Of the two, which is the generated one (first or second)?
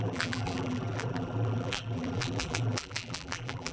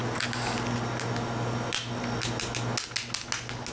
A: first